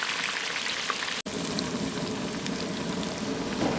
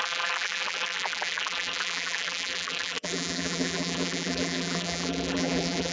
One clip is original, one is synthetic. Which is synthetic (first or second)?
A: second